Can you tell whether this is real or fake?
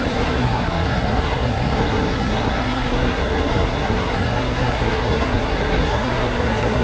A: fake